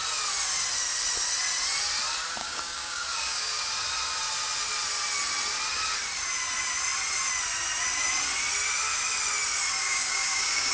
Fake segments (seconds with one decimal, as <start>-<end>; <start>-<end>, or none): 2.4-3.7; 9.8-10.7